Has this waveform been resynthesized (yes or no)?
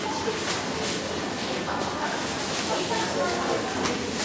no